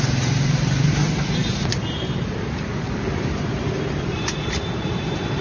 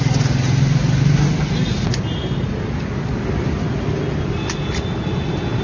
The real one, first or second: second